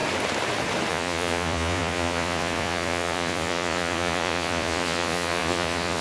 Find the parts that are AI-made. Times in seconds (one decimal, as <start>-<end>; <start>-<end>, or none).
0.9-6.0

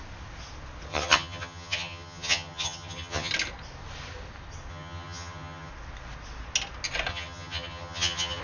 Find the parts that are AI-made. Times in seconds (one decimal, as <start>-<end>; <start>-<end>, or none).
0.9-3.3; 4.7-5.7; 7.1-8.4

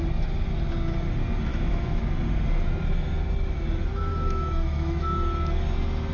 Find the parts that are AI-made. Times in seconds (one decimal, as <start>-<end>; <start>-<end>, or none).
1.5-2.0; 4.1-5.0

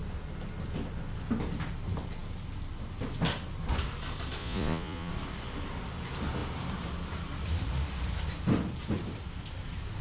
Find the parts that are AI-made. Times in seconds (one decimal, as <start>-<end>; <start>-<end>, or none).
4.4-5.1

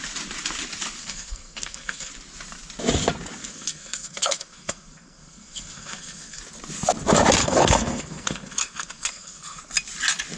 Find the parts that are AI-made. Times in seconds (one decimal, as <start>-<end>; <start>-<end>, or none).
1.0-2.1; 3.4-6.4; 7.4-9.6